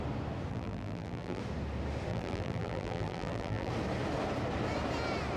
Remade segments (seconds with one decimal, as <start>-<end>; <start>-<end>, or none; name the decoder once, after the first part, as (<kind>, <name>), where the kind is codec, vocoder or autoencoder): 0.5-1.4 (vocoder, BigVGAN v2); 2.1-3.7